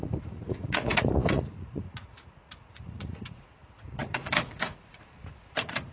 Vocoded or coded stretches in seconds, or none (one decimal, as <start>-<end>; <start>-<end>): 0.0-5.9